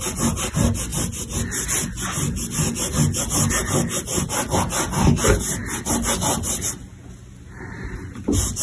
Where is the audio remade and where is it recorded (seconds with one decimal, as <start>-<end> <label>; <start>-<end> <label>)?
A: 0.0-8.6 recorded